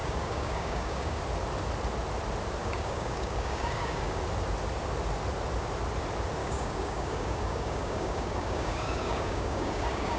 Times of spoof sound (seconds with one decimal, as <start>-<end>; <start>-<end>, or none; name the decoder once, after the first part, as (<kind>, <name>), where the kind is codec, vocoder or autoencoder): 0.0-1.2 (codec, DAC); 2.6-4.2; 6.4-10.2